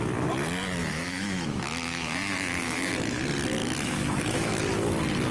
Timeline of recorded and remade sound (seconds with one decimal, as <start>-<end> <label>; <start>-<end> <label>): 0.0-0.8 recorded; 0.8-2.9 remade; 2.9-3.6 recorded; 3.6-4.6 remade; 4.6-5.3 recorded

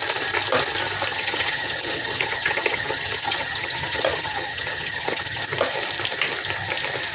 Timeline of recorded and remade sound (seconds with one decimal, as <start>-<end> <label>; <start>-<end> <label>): 0.0-1.1 recorded; 1.1-5.4 remade; 5.4-7.1 recorded

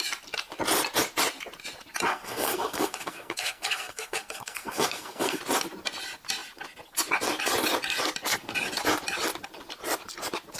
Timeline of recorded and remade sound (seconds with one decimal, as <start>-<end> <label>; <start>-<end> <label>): 0.0-2.1 recorded; 2.1-5.4 remade; 5.4-10.6 recorded

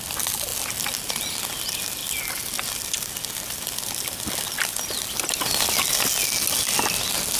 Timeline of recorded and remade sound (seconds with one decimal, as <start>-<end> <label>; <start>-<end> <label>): 0.0-7.4 recorded

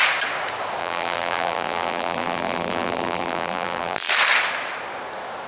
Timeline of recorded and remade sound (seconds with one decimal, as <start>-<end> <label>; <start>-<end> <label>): 0.0-0.8 recorded; 0.8-4.1 remade; 4.1-5.5 recorded